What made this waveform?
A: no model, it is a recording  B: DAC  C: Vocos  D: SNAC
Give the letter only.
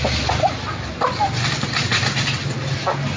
A